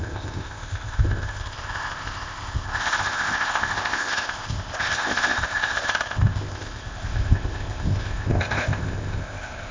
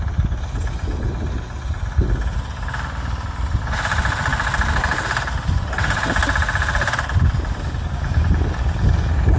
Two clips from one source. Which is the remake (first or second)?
first